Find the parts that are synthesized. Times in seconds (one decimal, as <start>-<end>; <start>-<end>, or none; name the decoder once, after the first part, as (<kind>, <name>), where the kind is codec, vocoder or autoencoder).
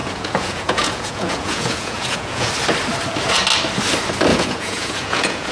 0.0-2.5 (vocoder, Vocos); 4.3-5.5